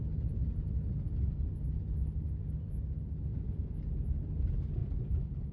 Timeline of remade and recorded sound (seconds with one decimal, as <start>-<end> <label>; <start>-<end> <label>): 0.0-3.3 recorded; 3.3-3.9 remade; 3.9-4.8 recorded; 4.8-5.5 remade